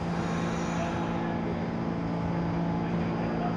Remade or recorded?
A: recorded